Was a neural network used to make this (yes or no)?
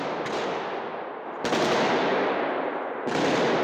no